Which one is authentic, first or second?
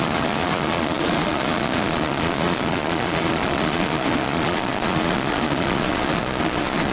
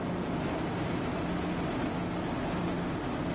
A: second